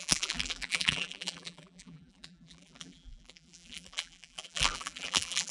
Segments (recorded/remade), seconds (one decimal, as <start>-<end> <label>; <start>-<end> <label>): 0.0-5.5 remade